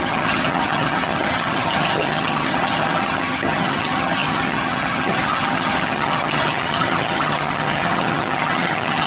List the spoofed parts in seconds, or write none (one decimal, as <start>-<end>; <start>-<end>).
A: 0.0-9.1

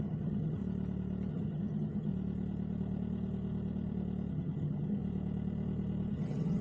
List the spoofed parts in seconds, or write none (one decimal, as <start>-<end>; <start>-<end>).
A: 0.0-0.6; 1.3-2.1; 4.3-5.0; 6.1-6.6

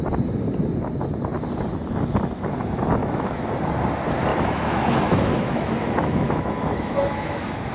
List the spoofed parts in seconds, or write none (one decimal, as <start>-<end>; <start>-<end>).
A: 3.0-3.5; 4.3-7.7

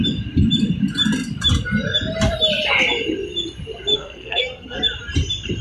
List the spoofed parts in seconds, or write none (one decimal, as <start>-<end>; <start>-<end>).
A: 3.9-4.8

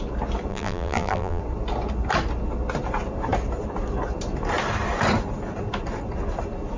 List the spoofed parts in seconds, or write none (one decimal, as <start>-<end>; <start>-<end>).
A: 0.5-1.4

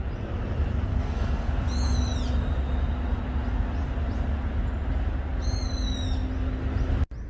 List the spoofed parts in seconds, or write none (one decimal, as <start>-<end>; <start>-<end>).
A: 0.9-1.5

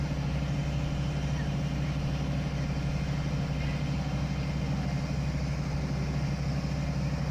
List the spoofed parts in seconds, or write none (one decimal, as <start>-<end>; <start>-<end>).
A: none

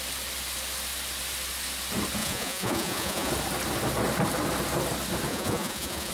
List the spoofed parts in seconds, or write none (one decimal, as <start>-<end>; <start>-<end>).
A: 2.2-3.3; 5.3-6.1